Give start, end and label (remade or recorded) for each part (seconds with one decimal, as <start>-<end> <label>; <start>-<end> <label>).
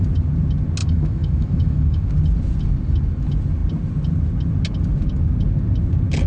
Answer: 0.0-0.8 recorded; 0.8-2.1 remade; 2.1-6.3 recorded